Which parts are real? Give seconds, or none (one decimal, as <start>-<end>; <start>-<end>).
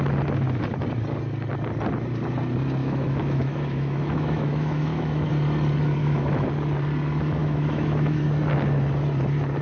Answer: 0.0-2.8; 5.3-6.0; 6.5-7.4; 8.2-9.6